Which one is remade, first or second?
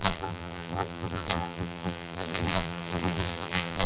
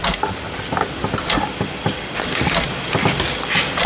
first